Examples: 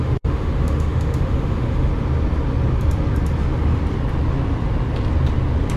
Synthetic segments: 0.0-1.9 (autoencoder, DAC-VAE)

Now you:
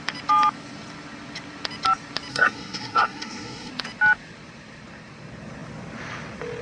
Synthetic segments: 2.3-3.7 (codec, SNAC)